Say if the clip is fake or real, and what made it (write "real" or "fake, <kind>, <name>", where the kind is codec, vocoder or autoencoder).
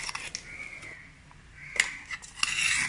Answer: real